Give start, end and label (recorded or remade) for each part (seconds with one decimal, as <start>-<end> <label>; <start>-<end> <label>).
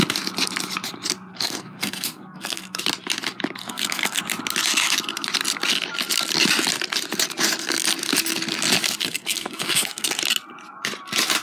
0.0-1.3 recorded; 1.3-2.8 remade; 2.8-3.6 recorded; 3.6-4.2 remade; 4.2-9.0 recorded; 9.0-10.2 remade; 10.2-11.4 recorded